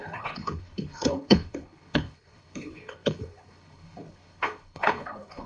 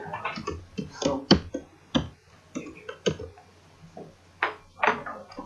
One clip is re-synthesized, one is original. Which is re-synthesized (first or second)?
first